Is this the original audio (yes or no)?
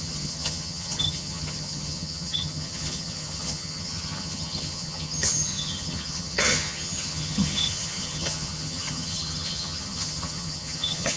no